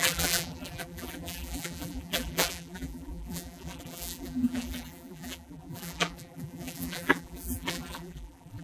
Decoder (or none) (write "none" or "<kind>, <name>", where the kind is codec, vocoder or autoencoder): vocoder, BigVGAN v2